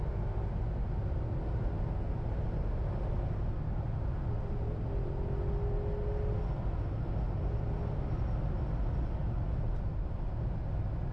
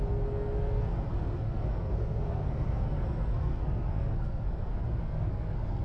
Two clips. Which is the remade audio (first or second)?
second